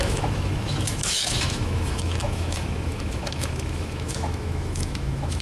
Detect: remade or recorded remade